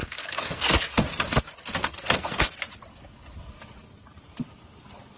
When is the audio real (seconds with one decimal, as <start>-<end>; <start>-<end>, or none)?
0.8-1.8; 2.5-5.2